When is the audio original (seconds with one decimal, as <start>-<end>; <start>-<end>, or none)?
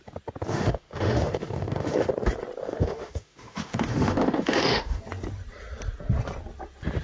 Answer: 0.0-0.5; 2.1-2.6; 5.0-7.0